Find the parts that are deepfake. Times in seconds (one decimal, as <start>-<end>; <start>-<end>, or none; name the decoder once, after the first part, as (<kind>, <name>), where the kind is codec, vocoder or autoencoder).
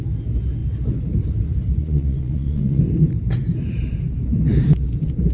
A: 1.8-2.8 (vocoder, Vocos)